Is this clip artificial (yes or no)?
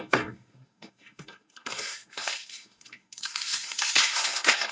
yes